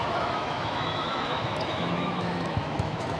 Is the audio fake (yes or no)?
yes